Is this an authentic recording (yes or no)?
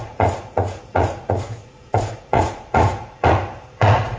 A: no